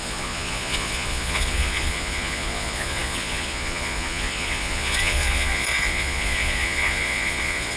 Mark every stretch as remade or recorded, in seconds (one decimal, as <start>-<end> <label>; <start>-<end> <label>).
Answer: 0.0-7.8 remade